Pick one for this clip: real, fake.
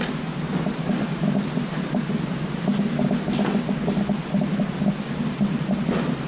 real